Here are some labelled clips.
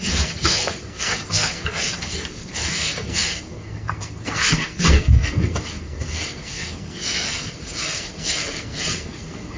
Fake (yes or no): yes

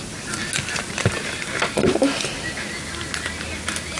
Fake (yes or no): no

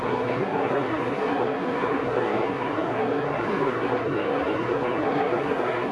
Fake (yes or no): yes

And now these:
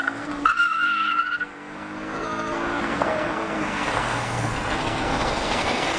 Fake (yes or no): yes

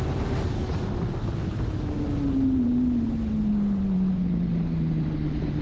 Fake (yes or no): no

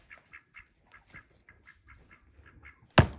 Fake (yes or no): no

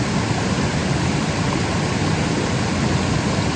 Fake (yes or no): no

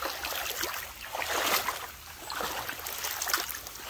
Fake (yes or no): no